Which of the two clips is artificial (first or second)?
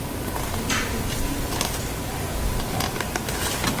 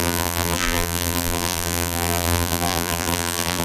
second